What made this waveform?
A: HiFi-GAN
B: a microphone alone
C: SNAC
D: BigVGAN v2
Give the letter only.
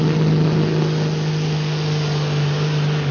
B